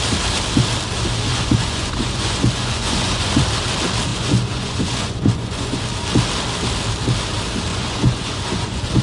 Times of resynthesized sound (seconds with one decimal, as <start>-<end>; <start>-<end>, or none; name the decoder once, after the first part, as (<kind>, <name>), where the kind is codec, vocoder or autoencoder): 1.3-3.3 (vocoder, Vocos); 4.1-5.8; 7.7-9.0